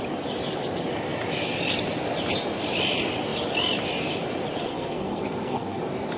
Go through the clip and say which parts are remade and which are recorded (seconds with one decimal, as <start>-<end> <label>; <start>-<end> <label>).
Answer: 0.0-4.6 recorded; 4.6-5.8 remade; 5.8-6.2 recorded